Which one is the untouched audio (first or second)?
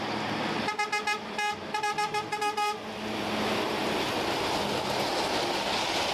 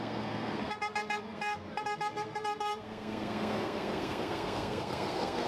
first